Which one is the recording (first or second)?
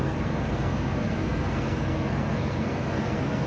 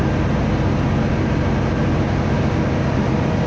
second